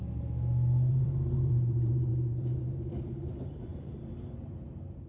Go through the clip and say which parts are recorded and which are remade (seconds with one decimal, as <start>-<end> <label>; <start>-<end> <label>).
0.0-0.9 recorded; 0.9-5.1 remade